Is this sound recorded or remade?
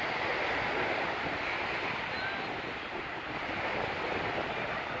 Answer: recorded